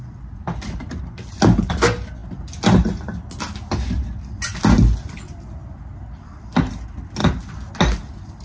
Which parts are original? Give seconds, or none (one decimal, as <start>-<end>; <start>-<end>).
0.0-8.4